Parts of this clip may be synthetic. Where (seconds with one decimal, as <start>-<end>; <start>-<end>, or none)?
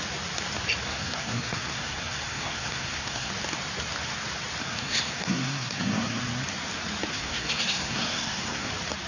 0.9-3.3; 4.6-6.2; 7.1-8.7